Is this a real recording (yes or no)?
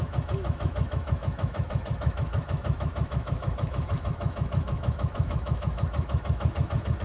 no